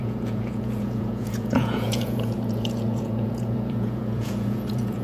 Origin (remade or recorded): remade